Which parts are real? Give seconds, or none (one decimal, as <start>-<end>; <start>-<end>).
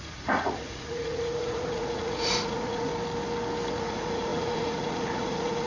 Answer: 2.9-3.7